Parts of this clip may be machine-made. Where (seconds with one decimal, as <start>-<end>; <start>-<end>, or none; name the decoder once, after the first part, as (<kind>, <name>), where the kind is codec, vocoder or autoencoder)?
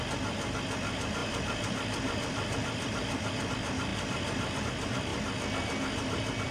0.0-5.1 (vocoder, BigVGAN v2)